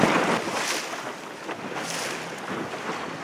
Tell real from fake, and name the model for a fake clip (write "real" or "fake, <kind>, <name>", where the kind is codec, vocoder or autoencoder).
real